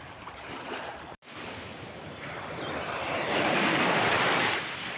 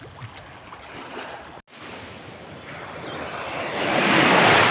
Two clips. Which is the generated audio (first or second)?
first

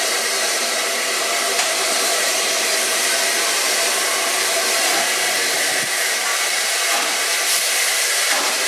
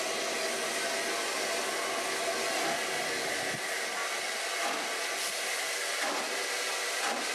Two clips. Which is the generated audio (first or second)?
first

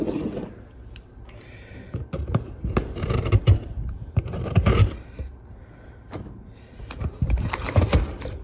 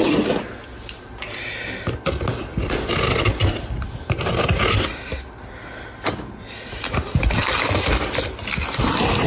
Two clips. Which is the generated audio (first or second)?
first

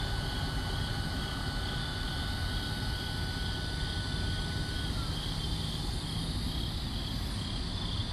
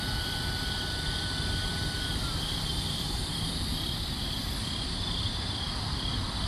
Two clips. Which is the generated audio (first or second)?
second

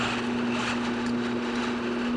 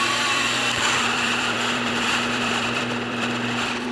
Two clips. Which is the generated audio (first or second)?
second